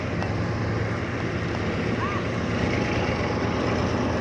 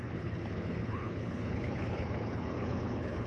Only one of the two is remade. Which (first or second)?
second